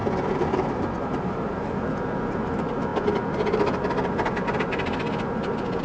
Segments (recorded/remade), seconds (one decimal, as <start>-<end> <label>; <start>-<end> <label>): 0.0-2.9 remade; 2.9-5.8 recorded